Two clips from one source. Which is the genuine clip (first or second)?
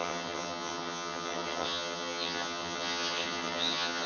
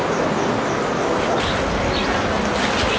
second